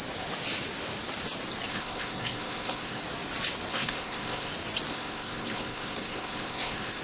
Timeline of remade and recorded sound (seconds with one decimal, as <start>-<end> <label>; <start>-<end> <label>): 0.0-1.7 recorded; 1.7-3.0 remade; 3.0-3.7 recorded; 3.7-4.5 remade; 4.5-4.9 recorded; 4.9-7.0 remade